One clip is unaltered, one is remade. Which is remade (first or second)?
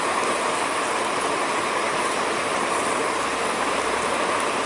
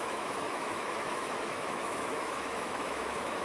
second